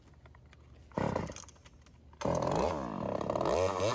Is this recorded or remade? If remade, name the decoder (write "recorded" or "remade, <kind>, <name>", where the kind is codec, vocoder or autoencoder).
recorded